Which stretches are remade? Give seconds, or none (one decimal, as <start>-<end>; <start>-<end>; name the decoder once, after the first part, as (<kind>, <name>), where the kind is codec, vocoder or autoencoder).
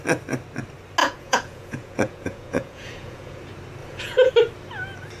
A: 1.0-3.4 (vocoder, Vocos); 3.8-4.3